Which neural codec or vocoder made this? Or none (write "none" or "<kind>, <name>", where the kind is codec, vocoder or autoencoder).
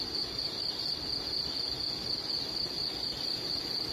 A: none